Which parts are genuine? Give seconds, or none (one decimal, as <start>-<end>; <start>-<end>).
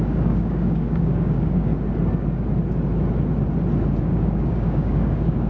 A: 1.7-4.0